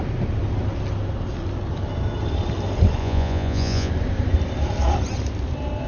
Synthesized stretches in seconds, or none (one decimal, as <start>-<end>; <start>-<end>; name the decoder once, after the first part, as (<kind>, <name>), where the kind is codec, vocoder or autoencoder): 3.0-3.9 (vocoder, Vocos)